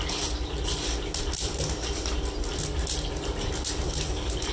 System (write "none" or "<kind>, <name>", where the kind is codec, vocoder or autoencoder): none